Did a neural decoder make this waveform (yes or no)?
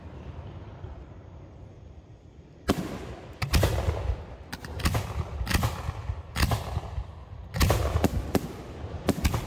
no